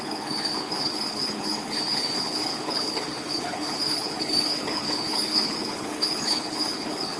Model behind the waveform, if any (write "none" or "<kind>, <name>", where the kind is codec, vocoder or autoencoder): codec, HILCodec